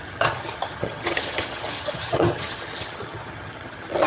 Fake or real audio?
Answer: fake